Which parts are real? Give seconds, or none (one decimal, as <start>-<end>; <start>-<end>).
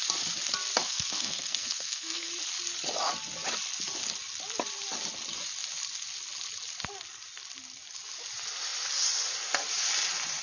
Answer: 0.0-0.8; 2.3-10.4